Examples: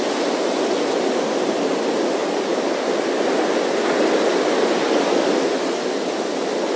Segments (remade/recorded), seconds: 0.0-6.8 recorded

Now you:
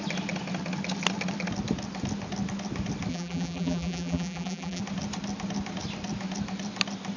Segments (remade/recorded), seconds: 0.0-3.1 recorded; 3.1-4.8 remade; 4.8-7.2 recorded

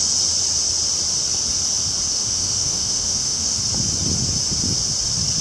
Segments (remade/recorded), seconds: 0.0-2.1 recorded; 2.1-3.6 remade; 3.6-5.4 recorded

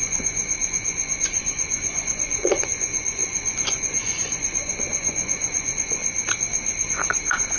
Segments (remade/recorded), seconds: 0.0-6.0 remade; 6.0-6.9 recorded; 6.9-7.6 remade